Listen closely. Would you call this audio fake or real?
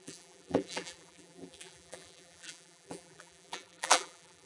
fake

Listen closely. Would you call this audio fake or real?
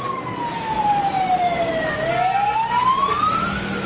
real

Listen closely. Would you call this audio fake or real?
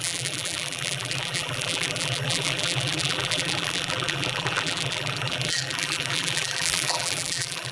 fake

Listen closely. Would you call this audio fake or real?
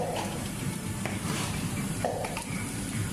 fake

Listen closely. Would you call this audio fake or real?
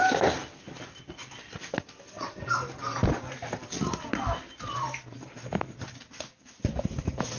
real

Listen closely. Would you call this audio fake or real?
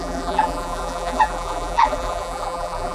fake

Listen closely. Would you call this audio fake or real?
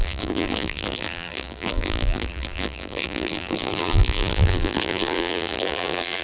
fake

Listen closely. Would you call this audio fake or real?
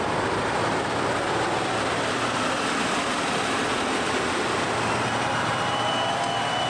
fake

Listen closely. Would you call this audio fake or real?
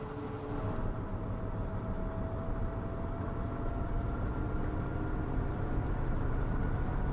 real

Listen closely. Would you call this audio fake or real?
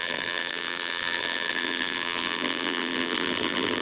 fake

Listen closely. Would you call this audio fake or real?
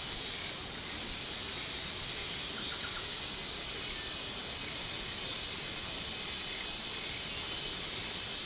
real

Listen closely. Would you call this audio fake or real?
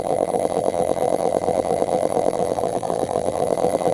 fake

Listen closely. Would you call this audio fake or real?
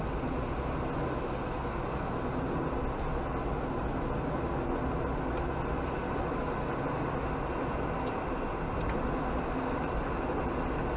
real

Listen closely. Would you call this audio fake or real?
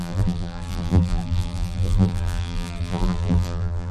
fake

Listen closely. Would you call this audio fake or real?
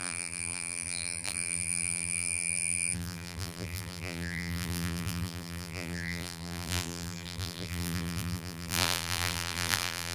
fake